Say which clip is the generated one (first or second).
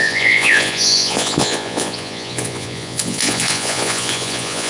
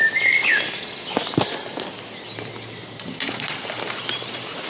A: first